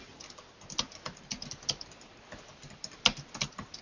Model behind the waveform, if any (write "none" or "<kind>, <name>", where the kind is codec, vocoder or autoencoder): none